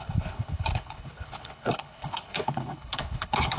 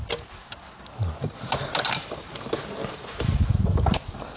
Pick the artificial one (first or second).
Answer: first